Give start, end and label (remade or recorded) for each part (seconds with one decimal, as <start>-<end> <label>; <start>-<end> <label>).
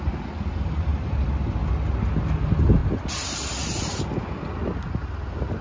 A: 0.0-5.6 recorded